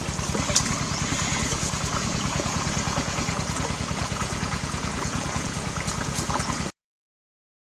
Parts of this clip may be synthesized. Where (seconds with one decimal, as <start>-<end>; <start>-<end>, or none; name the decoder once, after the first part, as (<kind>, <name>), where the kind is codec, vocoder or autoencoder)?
1.2-7.7 (vocoder, Vocos)